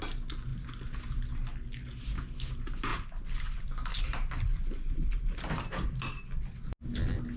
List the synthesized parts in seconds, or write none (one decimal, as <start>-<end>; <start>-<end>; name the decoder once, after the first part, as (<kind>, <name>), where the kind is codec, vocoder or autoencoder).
2.9-5.5 (vocoder, BigVGAN v2)